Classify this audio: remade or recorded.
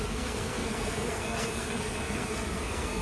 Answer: remade